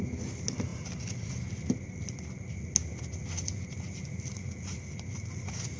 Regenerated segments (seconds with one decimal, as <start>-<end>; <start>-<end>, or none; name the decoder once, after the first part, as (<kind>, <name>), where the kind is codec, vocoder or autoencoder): none